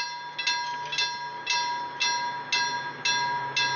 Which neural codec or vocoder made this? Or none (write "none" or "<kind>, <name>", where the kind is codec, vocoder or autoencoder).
none